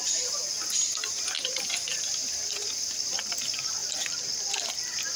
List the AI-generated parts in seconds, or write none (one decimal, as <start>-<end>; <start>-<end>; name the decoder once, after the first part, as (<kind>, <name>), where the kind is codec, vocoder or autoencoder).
3.8-4.7 (vocoder, BigVGAN v2)